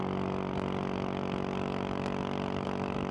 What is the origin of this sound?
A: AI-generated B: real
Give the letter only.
B